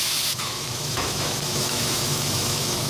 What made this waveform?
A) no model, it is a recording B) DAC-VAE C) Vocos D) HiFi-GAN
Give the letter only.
B